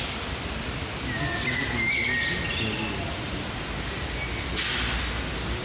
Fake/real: real